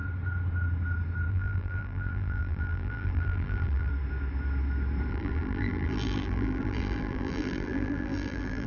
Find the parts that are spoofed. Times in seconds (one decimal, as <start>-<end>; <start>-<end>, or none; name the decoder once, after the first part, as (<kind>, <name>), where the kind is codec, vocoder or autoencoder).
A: 1.3-3.9 (vocoder, BigVGAN v2); 5.1-8.7